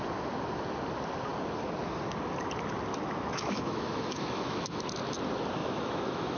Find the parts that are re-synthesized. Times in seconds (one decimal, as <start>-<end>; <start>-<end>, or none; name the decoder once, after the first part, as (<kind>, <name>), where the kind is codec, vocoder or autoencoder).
2.9-4.8 (autoencoder, DAC-VAE); 5.6-6.4